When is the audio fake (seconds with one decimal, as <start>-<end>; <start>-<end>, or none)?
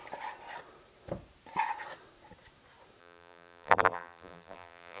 3.0-5.0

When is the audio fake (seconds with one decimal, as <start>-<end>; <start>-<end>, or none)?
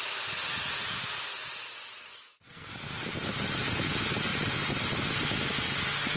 2.0-2.7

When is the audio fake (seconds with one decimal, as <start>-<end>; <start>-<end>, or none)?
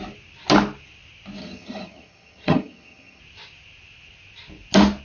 1.4-3.2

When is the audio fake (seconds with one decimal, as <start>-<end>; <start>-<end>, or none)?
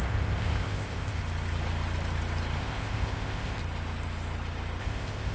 0.0-1.2; 2.6-3.6; 4.8-5.3